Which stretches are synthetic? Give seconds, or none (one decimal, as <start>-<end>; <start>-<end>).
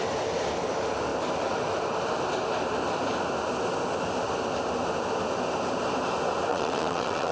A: 6.5-7.3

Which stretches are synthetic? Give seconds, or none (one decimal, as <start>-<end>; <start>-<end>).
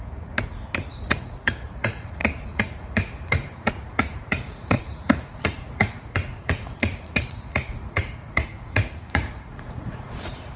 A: 0.0-10.6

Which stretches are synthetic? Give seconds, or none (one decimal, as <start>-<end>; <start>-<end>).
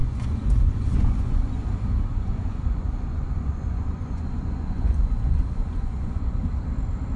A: 0.0-1.7; 2.1-6.4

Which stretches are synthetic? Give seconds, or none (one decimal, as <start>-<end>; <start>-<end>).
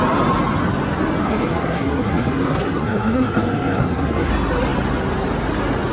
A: 1.2-4.3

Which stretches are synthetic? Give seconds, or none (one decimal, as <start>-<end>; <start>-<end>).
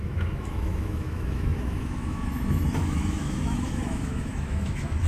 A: 0.0-5.1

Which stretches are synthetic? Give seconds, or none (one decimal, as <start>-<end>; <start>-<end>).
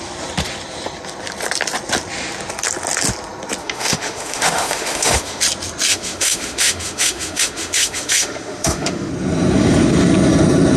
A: 3.6-5.4; 5.9-9.1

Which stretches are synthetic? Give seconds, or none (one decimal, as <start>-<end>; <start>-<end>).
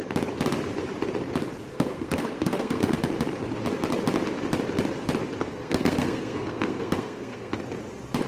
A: 1.7-3.0; 5.4-7.5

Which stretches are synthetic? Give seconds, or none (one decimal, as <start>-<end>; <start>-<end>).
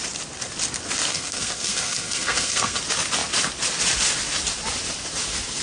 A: 1.1-2.8